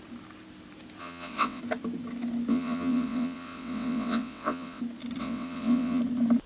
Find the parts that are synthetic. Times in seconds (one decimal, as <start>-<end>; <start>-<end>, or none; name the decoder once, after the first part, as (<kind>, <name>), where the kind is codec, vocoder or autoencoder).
1.0-1.6 (vocoder, WaveNeXt); 2.5-4.8; 5.2-6.0

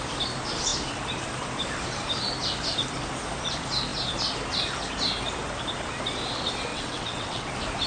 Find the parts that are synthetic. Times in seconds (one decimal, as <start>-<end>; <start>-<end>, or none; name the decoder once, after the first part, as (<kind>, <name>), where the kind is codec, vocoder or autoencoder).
6.7-7.5 (vocoder, WaveNeXt)